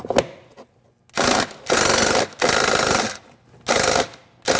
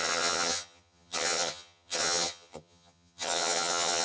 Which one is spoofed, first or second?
second